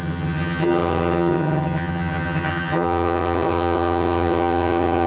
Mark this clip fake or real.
fake